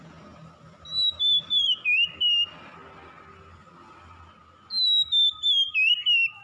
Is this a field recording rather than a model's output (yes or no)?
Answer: yes